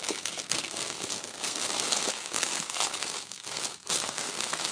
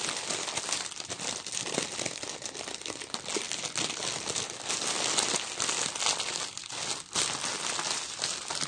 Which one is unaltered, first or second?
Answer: second